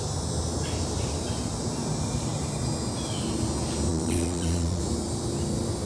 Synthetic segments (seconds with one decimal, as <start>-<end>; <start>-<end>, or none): 3.9-4.8